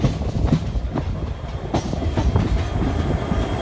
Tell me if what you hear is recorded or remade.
remade